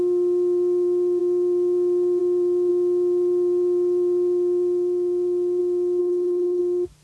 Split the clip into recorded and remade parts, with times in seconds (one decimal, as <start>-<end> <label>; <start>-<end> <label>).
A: 0.0-6.0 recorded; 6.0-6.6 remade; 6.6-7.0 recorded